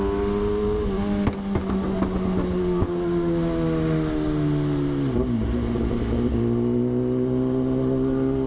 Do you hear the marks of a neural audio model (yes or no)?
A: no